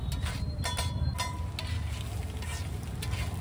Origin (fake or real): real